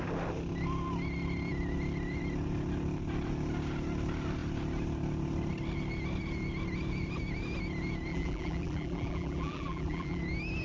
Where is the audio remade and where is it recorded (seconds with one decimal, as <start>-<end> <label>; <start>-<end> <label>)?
0.0-8.1 recorded; 8.1-10.2 remade; 10.2-10.6 recorded